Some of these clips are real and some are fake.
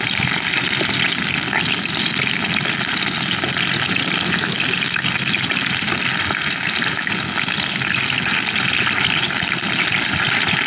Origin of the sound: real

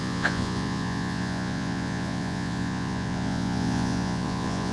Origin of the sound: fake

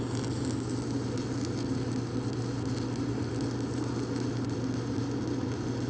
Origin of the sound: real